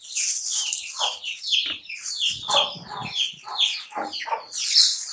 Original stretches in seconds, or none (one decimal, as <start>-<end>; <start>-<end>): 0.0-0.5; 1.8-5.1